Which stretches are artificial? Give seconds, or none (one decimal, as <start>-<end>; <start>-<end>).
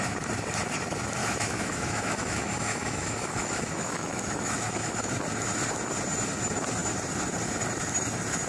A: 1.2-5.1